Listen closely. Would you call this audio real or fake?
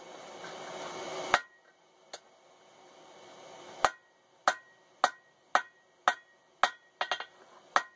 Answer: real